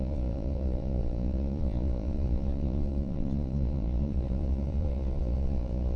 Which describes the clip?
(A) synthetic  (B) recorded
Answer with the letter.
A